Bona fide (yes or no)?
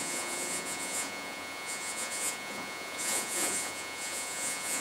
no